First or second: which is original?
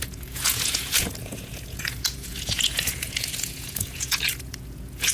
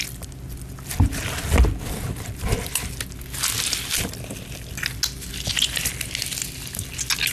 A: second